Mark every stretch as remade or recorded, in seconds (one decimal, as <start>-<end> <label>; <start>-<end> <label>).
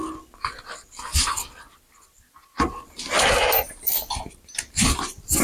0.0-5.4 recorded